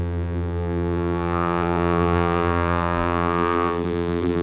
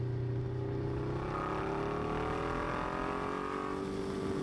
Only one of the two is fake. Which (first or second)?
first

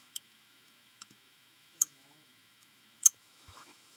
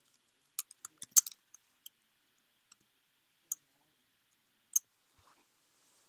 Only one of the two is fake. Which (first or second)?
first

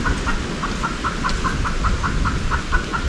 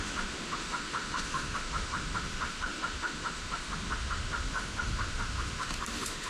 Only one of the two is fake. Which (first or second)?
second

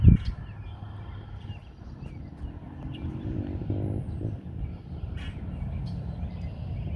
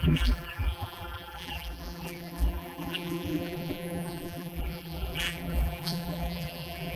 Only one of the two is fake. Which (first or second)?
second